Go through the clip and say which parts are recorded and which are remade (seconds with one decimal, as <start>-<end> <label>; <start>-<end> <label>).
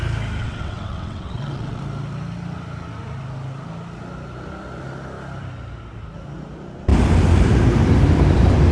0.0-0.4 recorded; 0.4-1.8 remade; 1.8-8.7 recorded